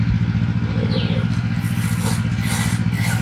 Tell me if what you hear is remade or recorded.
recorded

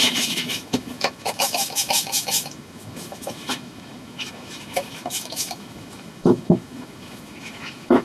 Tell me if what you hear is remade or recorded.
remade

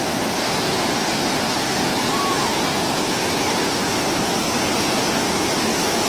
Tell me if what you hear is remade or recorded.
recorded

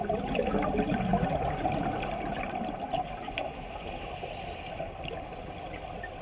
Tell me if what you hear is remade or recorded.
recorded